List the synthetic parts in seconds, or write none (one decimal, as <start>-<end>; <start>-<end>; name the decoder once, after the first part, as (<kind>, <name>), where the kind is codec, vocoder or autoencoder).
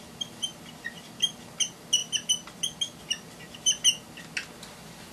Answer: none